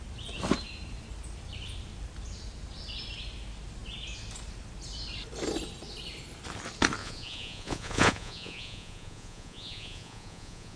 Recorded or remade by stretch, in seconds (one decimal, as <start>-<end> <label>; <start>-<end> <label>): 0.0-7.0 recorded; 7.0-10.8 remade